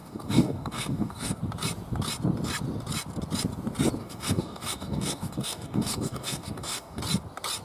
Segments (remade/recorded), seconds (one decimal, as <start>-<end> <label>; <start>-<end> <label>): 0.0-1.4 remade; 1.4-4.0 recorded; 4.0-7.0 remade; 7.0-7.6 recorded